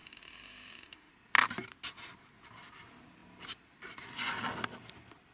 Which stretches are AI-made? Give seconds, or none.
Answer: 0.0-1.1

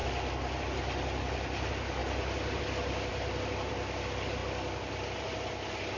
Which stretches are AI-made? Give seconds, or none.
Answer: none

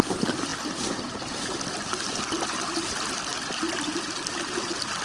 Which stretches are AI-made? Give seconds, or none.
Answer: none

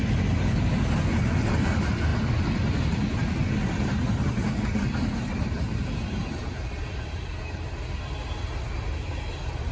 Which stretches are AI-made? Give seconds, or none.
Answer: none

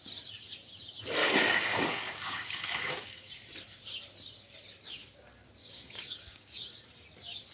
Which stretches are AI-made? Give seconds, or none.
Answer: 1.2-3.3; 5.6-6.5

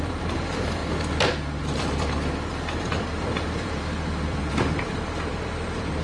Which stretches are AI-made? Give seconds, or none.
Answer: 0.0-0.8; 1.6-6.0

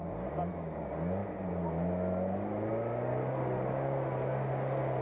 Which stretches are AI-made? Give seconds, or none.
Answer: none